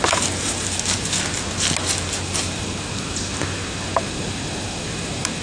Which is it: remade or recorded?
recorded